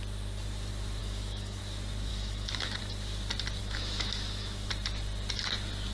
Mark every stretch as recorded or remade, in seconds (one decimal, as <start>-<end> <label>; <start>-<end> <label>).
0.0-1.0 recorded; 1.0-1.6 remade; 1.6-2.1 recorded; 2.1-2.8 remade; 2.8-3.6 recorded; 3.6-4.7 remade; 4.7-5.9 recorded